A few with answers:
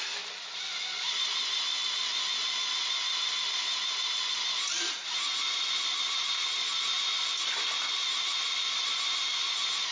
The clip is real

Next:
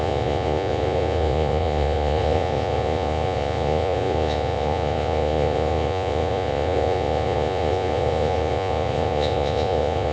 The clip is fake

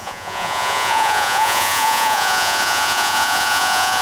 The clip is fake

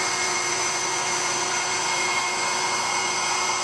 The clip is fake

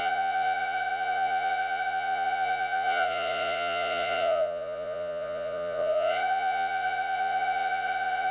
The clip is fake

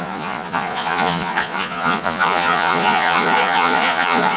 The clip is fake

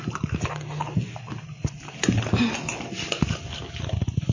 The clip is real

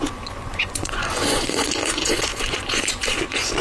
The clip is fake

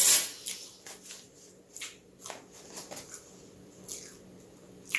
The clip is real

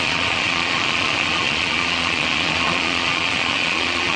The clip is fake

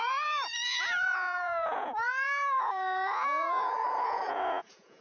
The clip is fake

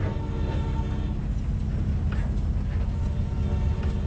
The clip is real